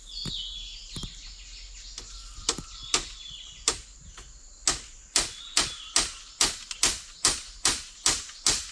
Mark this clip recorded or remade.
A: recorded